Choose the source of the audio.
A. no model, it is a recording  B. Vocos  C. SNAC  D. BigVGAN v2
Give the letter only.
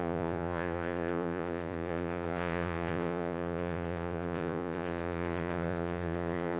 B